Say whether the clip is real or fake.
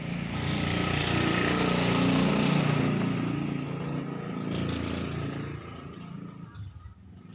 real